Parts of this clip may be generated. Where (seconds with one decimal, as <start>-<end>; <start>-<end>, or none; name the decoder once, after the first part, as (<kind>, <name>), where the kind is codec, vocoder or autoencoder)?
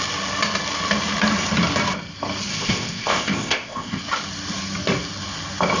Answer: 2.5-4.0 (codec, ZipCodec)